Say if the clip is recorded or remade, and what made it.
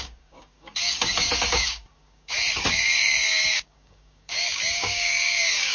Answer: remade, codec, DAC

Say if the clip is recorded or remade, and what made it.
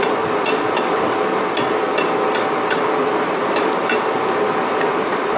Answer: recorded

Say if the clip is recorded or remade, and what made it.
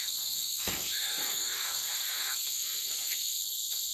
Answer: remade, codec, SNAC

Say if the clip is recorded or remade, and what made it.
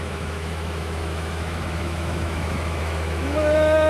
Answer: remade, autoencoder, DAC-VAE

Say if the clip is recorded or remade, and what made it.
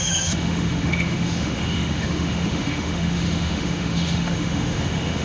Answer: remade, autoencoder, DAC-VAE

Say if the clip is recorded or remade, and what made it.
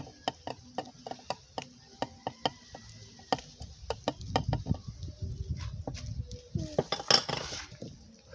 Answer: recorded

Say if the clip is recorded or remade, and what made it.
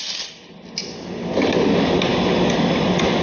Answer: recorded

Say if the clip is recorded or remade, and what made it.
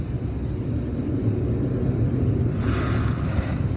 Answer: recorded